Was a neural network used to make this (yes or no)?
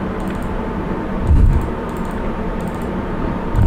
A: yes